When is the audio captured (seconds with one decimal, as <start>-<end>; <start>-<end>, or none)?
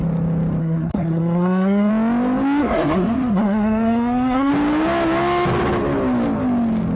0.0-0.6; 1.9-2.6; 4.5-7.0